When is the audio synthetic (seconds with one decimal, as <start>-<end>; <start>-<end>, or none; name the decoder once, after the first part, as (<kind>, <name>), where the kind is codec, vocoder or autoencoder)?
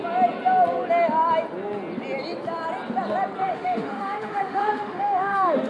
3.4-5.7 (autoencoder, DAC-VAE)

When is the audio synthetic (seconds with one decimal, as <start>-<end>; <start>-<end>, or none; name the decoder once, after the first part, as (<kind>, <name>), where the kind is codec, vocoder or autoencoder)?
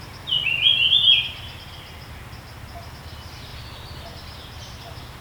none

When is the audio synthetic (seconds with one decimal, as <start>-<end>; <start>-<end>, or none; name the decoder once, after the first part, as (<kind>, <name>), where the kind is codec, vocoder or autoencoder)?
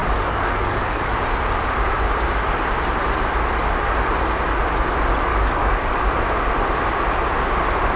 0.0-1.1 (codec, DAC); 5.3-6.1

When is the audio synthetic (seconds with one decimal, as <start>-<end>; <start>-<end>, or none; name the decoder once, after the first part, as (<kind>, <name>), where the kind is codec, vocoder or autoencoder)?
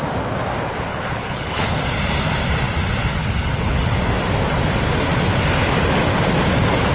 0.9-1.8 (codec, HILCodec); 3.1-4.0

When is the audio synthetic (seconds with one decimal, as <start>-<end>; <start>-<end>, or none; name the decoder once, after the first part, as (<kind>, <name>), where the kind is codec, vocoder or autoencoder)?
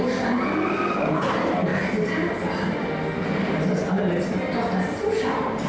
0.5-1.1 (codec, SNAC)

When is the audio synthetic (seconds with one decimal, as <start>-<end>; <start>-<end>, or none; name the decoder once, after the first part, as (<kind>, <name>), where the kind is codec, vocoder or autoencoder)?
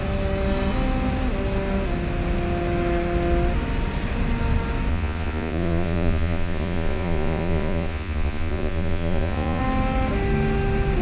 4.9-9.6 (vocoder, Vocos)